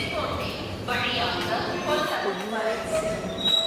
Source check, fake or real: real